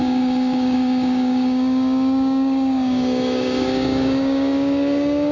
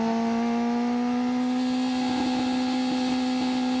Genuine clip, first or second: second